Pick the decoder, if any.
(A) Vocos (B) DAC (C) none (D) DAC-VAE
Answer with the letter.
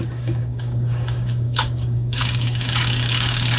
B